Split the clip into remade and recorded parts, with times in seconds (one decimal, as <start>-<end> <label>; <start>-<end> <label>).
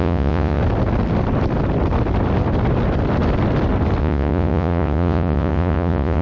0.0-0.6 remade; 0.6-4.0 recorded; 4.0-6.2 remade